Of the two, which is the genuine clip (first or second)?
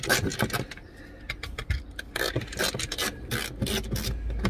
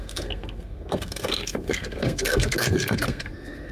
first